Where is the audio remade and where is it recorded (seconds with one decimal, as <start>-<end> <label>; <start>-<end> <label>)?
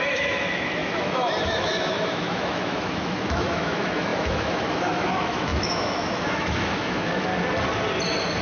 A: 0.0-7.3 remade; 7.3-8.4 recorded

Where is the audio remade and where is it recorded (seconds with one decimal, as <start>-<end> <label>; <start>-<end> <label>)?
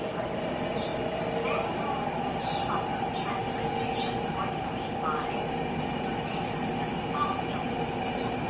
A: 0.0-8.5 recorded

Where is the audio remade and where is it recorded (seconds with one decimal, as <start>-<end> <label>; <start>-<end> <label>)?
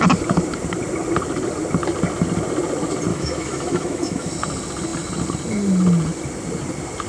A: 0.0-3.1 recorded; 3.1-4.3 remade; 4.3-7.1 recorded